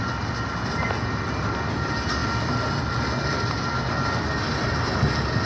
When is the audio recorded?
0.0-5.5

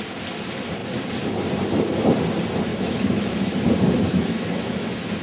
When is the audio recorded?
0.0-2.7; 3.6-4.1

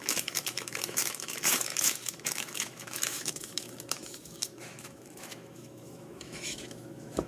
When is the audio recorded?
none

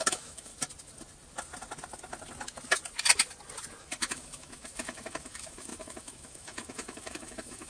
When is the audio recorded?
0.5-3.8

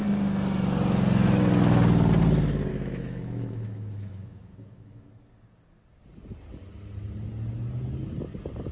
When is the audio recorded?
0.0-2.7; 5.1-8.7

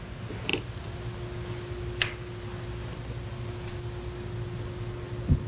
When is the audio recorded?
0.0-5.5

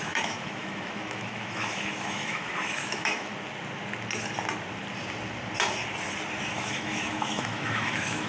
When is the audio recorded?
3.3-6.5